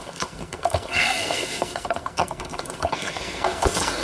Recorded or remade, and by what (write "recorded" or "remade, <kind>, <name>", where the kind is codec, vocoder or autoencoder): remade, codec, SNAC